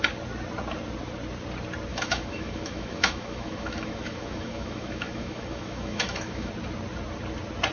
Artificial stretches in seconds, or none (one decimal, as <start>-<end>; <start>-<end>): 1.9-6.5